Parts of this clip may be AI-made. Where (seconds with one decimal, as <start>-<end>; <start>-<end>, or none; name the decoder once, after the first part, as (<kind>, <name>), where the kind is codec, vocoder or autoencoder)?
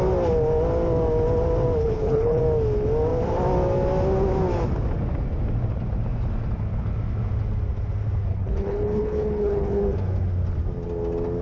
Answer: 1.8-2.4 (codec, HILCodec); 8.3-9.8